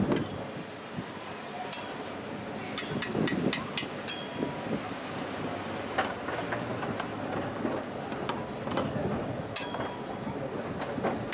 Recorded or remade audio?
recorded